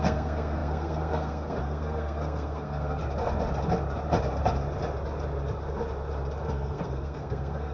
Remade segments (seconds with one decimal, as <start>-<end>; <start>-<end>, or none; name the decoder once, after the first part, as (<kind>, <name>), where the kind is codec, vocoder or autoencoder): 0.0-3.0 (codec, SNAC); 6.5-7.7